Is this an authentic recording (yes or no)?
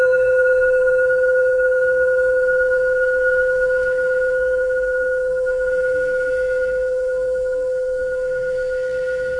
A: no